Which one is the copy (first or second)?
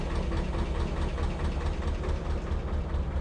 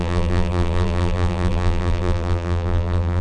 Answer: second